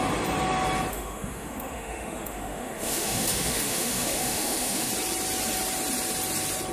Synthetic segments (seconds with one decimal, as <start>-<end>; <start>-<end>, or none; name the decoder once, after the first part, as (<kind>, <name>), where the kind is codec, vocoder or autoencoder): 0.9-4.9 (autoencoder, DAC-VAE)